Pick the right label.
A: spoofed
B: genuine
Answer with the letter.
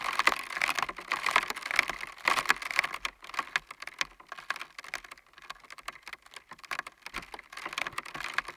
B